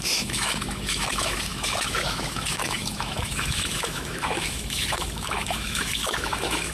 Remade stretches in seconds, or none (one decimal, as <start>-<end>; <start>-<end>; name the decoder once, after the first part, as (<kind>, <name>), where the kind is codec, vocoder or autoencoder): 0.0-6.7 (autoencoder, DAC-VAE)